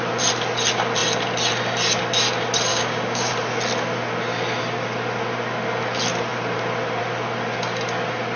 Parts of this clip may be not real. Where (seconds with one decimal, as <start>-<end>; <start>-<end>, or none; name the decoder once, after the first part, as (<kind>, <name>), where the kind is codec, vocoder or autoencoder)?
2.7-3.3 (codec, DAC)